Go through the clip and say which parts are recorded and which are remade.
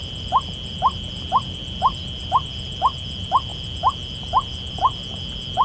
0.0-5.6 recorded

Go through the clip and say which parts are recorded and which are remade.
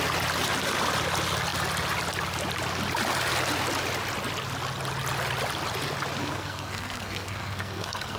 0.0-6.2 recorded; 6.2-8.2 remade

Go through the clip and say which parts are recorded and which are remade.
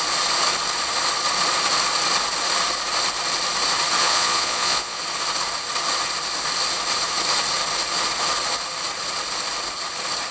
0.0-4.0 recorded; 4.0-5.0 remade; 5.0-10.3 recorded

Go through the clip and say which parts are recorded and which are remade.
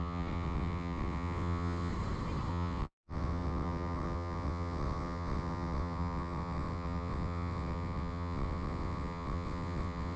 0.0-1.9 remade; 1.9-2.5 recorded; 2.5-10.2 remade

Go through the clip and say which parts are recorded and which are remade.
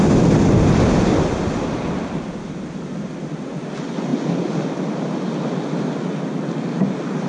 0.0-7.3 recorded